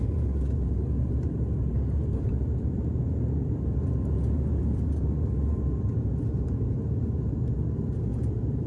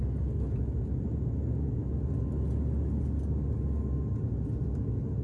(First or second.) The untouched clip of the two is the second